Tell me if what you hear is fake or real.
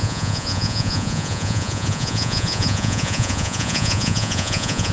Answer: fake